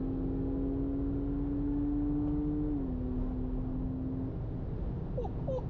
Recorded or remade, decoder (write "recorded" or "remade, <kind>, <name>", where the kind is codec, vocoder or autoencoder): recorded